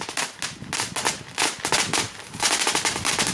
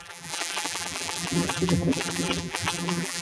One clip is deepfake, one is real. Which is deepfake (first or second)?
second